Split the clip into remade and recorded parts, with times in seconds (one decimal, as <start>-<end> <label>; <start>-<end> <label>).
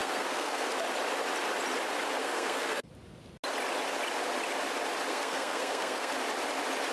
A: 0.0-0.7 remade; 0.7-2.2 recorded; 2.2-2.9 remade; 2.9-5.1 recorded; 5.1-6.1 remade; 6.1-6.9 recorded